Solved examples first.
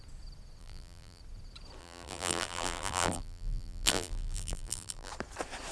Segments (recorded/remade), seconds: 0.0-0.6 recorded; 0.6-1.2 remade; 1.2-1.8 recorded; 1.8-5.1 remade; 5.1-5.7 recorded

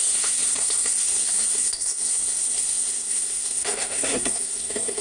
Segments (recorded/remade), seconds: 0.0-5.0 remade

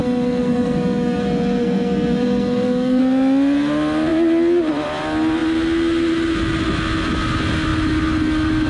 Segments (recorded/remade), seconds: 0.0-3.0 remade; 3.0-8.7 recorded

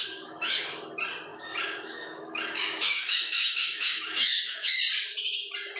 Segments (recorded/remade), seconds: 0.0-0.6 remade; 0.6-1.3 recorded; 1.3-4.8 remade; 4.8-5.8 recorded

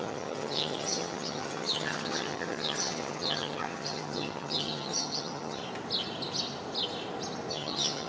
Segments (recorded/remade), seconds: 0.0-5.6 remade; 5.6-7.5 recorded; 7.5-8.1 remade

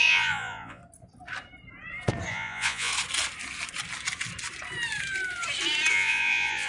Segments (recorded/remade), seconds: 0.0-0.8 remade; 0.8-2.3 recorded; 2.3-2.9 remade; 2.9-5.9 recorded; 5.9-6.7 remade